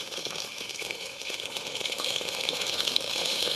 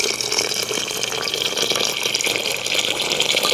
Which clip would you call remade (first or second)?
first